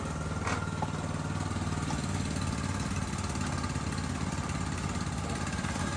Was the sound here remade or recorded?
recorded